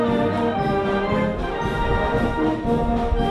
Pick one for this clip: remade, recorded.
recorded